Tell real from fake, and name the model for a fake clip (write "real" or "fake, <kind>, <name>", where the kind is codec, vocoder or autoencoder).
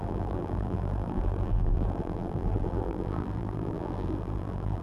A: fake, vocoder, BigVGAN v2